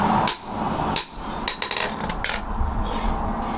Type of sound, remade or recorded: recorded